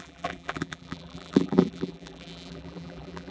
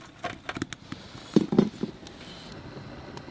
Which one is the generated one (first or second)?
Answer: first